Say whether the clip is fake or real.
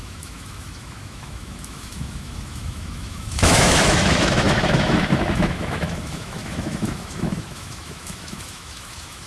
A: fake